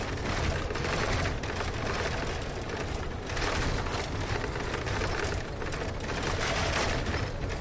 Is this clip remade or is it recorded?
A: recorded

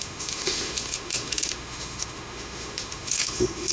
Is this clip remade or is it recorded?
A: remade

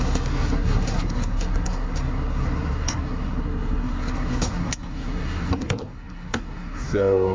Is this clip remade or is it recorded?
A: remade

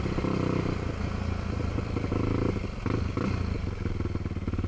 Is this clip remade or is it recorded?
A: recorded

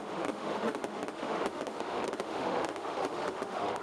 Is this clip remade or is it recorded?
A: remade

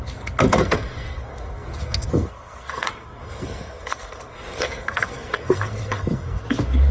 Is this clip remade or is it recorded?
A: remade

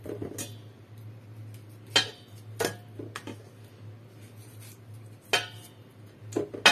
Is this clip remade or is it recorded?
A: recorded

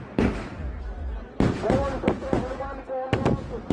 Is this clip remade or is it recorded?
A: recorded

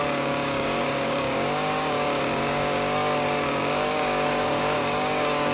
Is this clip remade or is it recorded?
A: remade